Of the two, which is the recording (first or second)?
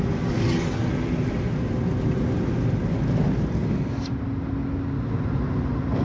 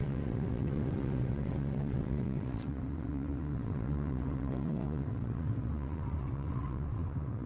first